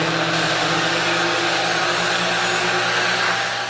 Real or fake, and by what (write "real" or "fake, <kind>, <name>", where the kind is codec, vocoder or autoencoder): real